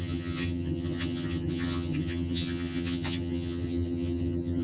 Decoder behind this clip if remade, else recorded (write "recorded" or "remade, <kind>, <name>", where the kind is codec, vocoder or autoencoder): remade, vocoder, HiFi-GAN